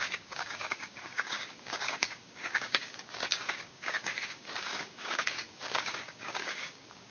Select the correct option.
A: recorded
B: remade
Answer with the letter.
B